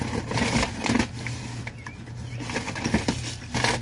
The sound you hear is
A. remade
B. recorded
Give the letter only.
B